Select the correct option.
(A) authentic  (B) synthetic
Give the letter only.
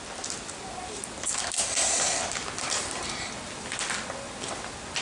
A